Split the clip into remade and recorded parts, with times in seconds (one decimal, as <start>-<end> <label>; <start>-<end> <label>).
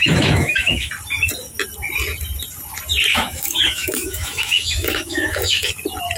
0.0-0.9 remade; 0.9-3.1 recorded; 3.1-5.7 remade; 5.7-6.2 recorded